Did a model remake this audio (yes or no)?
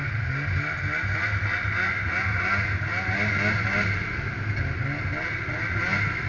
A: no